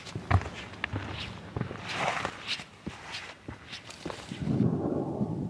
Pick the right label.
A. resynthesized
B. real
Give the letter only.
B